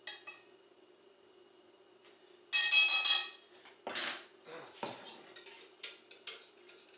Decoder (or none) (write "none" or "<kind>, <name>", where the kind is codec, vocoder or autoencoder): none